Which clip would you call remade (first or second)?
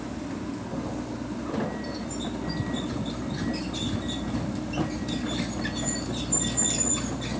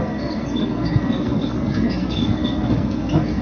second